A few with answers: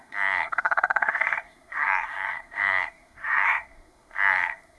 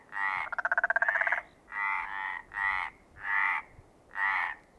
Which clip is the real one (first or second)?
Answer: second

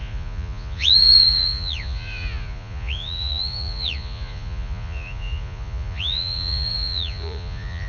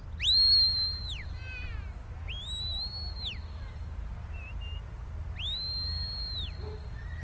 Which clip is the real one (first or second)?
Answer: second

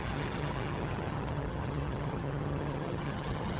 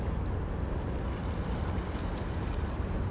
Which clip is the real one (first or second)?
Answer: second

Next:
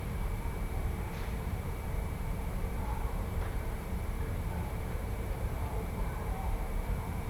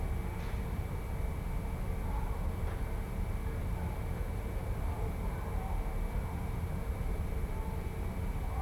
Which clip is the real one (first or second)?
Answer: second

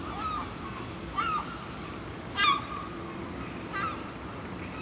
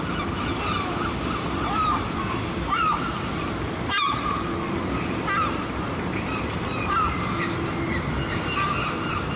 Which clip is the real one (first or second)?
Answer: first